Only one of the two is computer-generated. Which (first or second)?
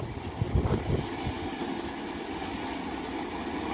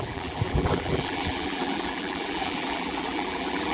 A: second